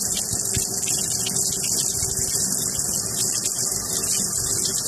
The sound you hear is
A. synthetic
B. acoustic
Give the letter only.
B